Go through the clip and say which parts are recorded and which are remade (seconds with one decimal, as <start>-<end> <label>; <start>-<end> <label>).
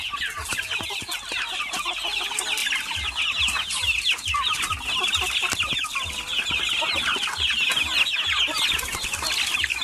0.0-9.8 recorded